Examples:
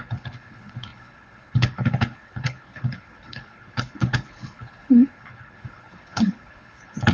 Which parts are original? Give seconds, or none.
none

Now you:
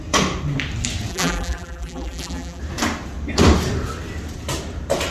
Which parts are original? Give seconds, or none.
0.0-1.1; 2.6-5.1

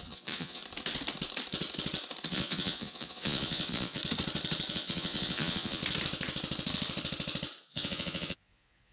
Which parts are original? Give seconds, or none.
0.6-2.3; 4.0-4.7; 5.8-7.6

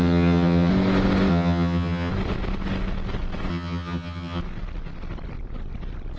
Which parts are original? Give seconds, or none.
0.7-1.3; 2.1-3.5; 4.4-6.2

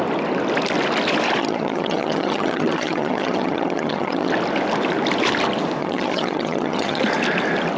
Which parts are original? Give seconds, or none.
0.0-1.4; 4.3-5.8; 7.0-7.8